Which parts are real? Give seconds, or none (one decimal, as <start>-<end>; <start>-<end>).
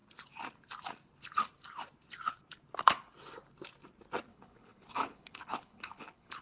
0.0-4.3